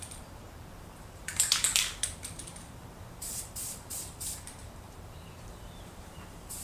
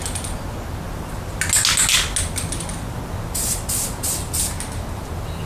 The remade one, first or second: first